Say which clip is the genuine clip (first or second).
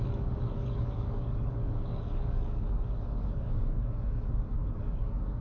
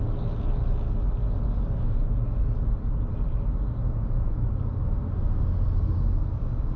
second